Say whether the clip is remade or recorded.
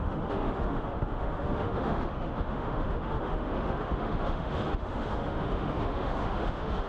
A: remade